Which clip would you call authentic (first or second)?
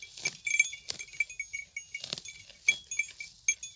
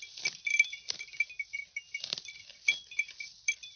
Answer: first